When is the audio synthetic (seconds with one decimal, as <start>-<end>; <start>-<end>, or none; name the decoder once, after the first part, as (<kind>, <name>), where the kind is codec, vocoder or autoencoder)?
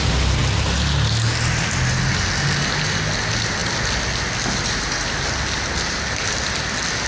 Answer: none